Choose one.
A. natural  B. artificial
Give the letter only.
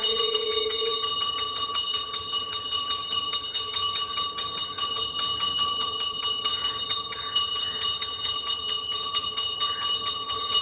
B